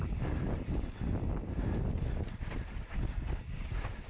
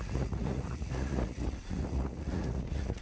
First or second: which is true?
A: first